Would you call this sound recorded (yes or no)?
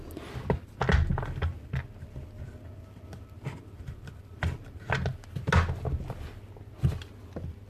yes